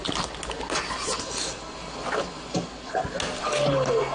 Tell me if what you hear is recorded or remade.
recorded